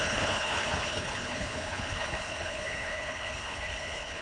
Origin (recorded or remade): remade